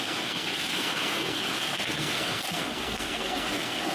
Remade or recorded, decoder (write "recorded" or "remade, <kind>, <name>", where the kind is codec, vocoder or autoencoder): remade, codec, SNAC